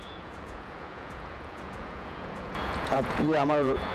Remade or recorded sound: remade